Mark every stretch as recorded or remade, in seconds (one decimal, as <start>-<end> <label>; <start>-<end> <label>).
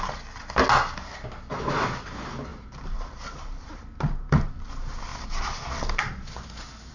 0.0-2.5 recorded; 2.5-4.5 remade; 4.5-6.9 recorded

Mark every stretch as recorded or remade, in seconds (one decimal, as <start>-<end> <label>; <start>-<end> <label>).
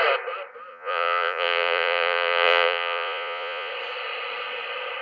0.0-0.7 recorded; 0.7-3.7 remade; 3.7-5.0 recorded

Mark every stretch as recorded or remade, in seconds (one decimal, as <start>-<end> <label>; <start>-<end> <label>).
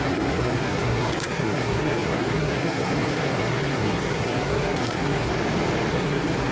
0.0-5.3 remade; 5.3-5.9 recorded; 5.9-6.5 remade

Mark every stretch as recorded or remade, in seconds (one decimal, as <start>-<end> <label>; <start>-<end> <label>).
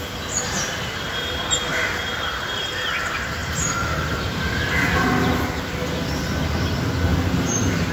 0.0-1.7 recorded; 1.7-2.7 remade; 2.7-3.4 recorded; 3.4-4.2 remade; 4.2-7.9 recorded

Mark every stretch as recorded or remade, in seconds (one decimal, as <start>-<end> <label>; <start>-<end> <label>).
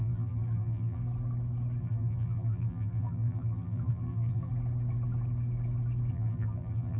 0.0-1.0 remade; 1.0-1.8 recorded; 1.8-4.5 remade; 4.5-6.1 recorded; 6.1-7.0 remade